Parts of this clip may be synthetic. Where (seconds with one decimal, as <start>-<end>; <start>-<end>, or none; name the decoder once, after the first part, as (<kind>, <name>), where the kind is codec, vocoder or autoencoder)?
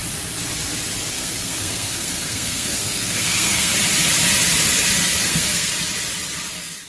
1.1-3.7 (codec, SNAC); 5.2-5.7; 6.5-6.9